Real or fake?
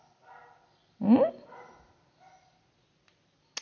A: real